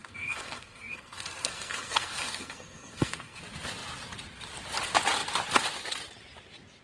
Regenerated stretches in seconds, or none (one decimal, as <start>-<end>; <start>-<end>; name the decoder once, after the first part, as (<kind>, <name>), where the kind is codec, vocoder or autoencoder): 0.0-3.4 (codec, SNAC)